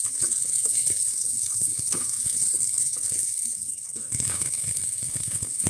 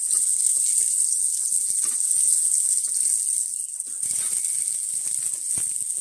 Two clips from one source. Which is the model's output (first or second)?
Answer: first